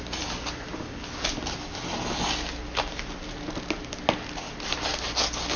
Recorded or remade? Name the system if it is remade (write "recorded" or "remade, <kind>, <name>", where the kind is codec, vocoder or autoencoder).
recorded